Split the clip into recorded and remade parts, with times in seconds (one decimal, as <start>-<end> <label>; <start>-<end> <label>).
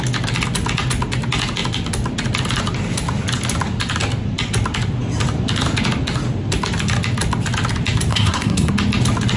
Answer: 0.0-8.1 recorded; 8.1-8.7 remade; 8.7-9.4 recorded